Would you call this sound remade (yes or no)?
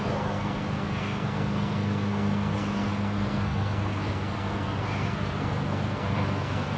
yes